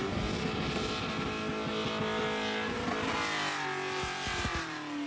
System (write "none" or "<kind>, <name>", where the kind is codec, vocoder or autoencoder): none